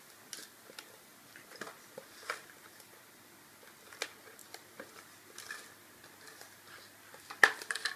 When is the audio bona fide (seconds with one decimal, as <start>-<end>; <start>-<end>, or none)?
0.0-4.4; 5.2-8.0